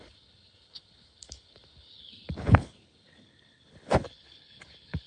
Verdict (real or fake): fake